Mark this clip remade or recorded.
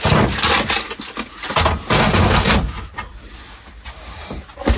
recorded